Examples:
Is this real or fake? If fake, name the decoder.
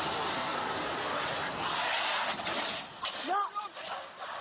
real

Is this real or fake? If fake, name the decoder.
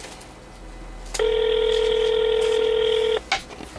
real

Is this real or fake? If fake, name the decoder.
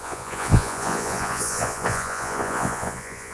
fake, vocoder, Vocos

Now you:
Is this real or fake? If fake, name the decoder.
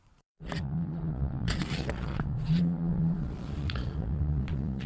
fake, vocoder, Vocos